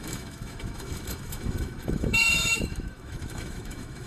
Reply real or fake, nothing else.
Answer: fake